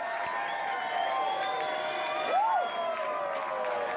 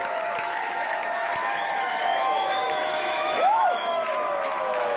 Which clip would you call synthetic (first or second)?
second